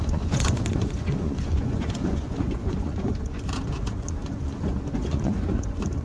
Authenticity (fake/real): fake